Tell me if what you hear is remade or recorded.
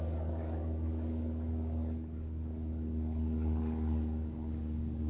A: remade